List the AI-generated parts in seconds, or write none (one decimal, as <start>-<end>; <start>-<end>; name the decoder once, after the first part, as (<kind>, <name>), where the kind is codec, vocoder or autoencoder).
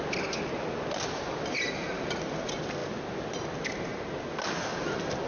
none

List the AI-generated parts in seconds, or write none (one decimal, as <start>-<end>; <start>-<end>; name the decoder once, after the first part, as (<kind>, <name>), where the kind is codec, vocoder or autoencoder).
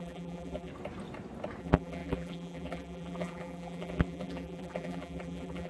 0.0-0.7 (vocoder, BigVGAN v2); 1.6-5.7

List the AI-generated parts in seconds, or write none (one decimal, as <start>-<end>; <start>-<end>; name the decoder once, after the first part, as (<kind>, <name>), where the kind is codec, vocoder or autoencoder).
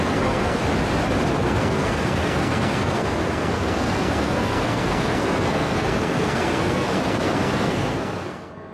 0.0-0.6 (codec, SNAC); 1.3-8.7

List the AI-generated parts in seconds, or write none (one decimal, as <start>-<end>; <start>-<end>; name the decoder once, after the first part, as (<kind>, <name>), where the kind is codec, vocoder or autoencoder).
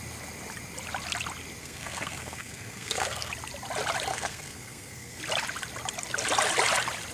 1.6-3.3 (codec, SNAC); 4.1-5.2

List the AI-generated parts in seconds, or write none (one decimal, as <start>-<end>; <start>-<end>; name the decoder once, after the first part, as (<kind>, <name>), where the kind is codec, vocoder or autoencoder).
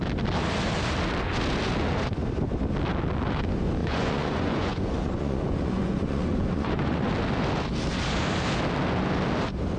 3.8-7.1 (vocoder, Vocos)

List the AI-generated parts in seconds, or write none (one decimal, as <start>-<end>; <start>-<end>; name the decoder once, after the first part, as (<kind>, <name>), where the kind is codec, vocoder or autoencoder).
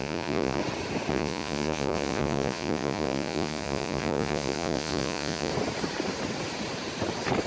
0.0-0.6 (vocoder, Vocos); 1.1-5.5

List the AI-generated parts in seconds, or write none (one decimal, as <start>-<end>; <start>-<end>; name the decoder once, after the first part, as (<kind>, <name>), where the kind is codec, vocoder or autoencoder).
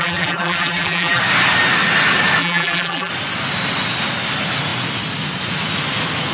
0.0-1.2 (vocoder, BigVGAN v2); 2.4-3.1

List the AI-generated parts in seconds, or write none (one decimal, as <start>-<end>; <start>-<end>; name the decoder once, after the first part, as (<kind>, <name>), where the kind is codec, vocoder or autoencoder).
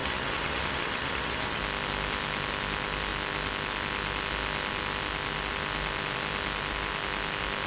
0.0-1.6 (vocoder, HiFi-GAN)